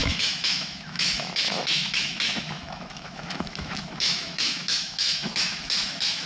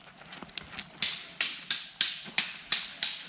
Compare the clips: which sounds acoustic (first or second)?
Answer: second